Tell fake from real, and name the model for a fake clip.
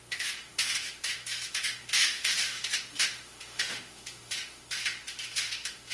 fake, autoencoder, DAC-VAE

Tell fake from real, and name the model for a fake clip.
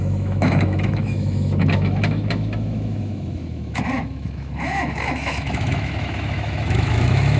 fake, autoencoder, DAC-VAE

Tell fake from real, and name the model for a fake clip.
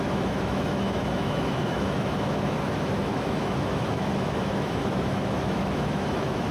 fake, autoencoder, DAC-VAE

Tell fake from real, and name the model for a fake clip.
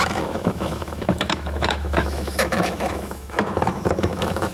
fake, autoencoder, DAC-VAE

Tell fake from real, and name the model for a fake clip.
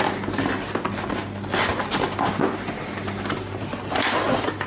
real